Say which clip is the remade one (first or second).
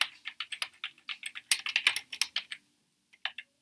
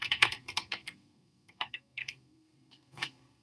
second